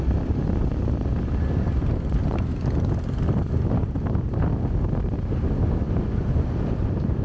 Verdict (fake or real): real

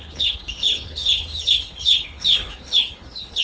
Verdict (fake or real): fake